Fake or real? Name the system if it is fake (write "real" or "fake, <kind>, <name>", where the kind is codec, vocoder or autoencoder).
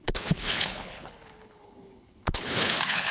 fake, codec, HILCodec